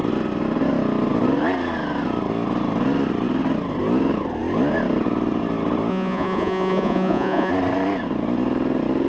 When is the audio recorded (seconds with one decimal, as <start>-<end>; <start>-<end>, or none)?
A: 0.0-5.9; 7.5-9.1